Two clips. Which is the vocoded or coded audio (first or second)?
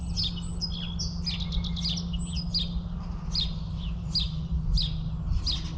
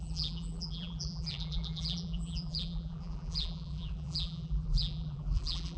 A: second